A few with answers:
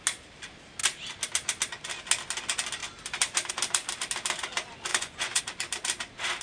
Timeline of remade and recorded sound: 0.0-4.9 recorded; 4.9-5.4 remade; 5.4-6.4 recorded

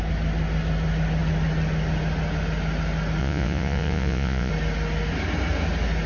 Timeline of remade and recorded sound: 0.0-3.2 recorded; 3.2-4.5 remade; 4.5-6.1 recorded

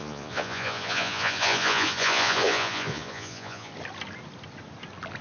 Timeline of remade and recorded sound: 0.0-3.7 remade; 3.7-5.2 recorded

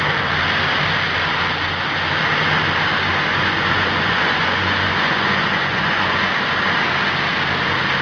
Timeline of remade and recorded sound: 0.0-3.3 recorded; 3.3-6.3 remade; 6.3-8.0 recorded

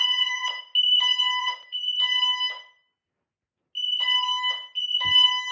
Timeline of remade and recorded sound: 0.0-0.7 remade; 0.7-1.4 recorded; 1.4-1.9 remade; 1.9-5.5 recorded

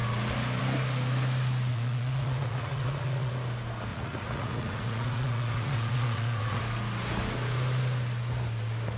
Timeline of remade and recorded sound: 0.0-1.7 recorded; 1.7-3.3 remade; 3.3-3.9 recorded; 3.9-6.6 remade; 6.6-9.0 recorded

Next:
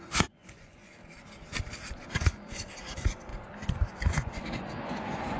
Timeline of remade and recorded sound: 0.0-1.0 remade; 1.0-2.0 recorded; 2.0-3.3 remade; 3.3-3.9 recorded; 3.9-5.4 remade

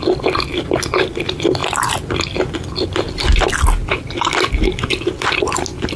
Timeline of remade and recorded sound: 0.0-6.0 recorded